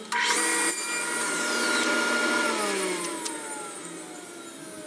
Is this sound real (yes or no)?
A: yes